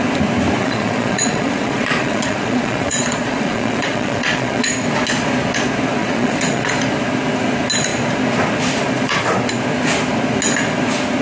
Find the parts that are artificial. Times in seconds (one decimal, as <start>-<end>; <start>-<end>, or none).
0.6-4.7; 6.0-6.7